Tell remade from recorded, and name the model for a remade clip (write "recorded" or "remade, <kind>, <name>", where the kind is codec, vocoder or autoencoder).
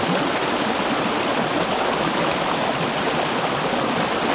recorded